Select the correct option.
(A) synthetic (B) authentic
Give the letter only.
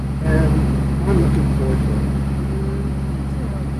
B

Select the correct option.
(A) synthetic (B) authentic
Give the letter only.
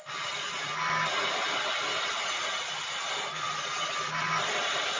B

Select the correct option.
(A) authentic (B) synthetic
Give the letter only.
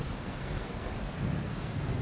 B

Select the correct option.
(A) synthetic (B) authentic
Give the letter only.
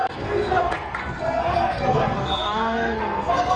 A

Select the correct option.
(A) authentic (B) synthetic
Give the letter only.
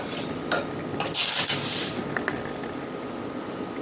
A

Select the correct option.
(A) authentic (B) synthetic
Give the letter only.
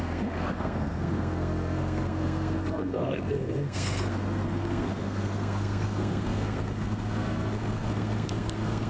B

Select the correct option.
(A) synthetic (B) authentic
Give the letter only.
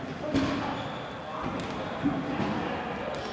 B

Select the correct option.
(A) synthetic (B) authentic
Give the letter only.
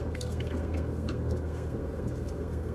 A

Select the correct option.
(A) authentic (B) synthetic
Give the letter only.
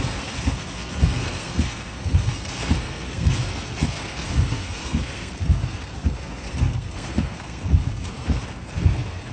B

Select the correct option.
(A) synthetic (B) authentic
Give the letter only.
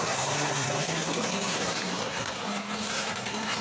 A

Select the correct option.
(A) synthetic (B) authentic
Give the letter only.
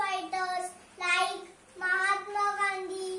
B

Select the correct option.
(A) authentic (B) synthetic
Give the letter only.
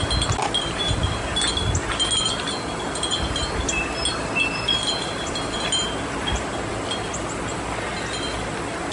A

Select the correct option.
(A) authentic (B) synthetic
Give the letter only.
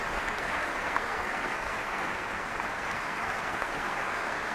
B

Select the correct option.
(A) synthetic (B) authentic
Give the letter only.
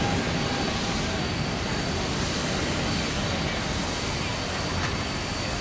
B